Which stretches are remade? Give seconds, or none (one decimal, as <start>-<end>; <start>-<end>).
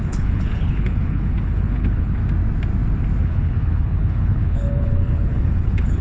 0.0-2.2; 3.2-6.0